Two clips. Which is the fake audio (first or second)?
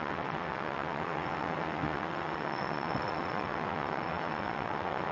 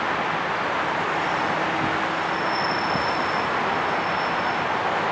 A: first